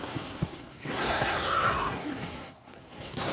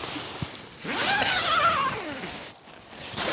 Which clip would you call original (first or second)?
second